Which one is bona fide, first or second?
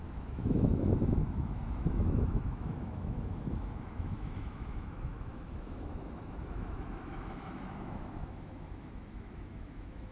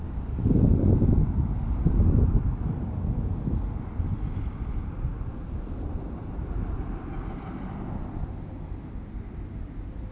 second